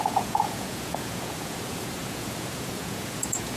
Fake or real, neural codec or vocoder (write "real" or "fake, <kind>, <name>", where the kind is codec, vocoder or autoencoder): fake, vocoder, Vocos